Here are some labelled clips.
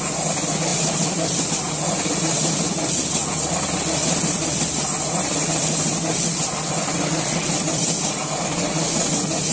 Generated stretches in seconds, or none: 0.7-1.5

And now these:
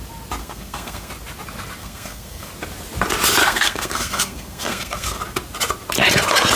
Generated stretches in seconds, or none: 0.4-1.1; 1.8-2.5; 3.4-5.2

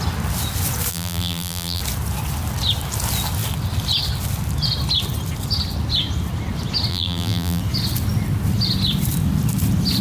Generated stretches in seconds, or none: 0.9-1.8; 6.9-7.6

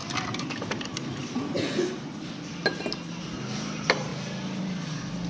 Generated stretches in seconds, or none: 3.2-4.1; 4.6-5.3

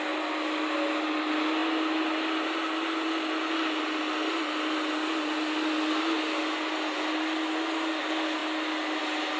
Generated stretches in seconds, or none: none

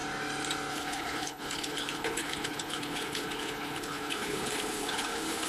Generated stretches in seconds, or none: 0.7-5.5

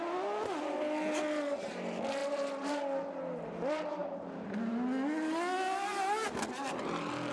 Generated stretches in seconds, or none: 2.2-2.7

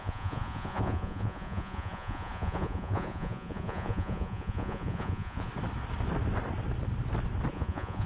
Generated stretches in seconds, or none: 0.0-5.5; 7.5-8.1